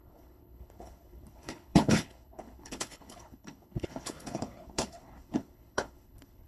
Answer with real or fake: fake